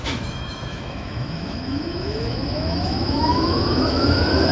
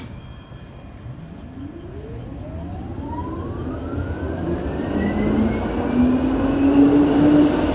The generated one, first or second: first